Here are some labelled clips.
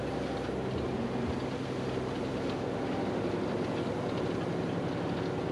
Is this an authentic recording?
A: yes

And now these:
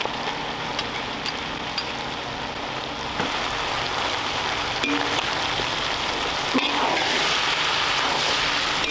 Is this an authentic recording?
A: yes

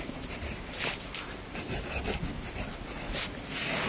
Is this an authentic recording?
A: yes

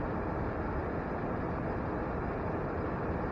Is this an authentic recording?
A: yes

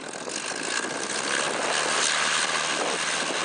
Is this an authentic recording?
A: yes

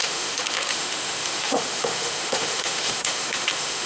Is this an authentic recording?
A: no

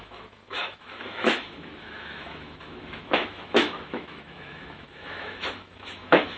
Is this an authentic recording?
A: no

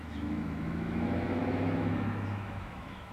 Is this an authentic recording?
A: no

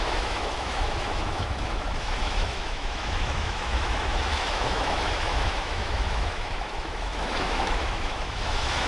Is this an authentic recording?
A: no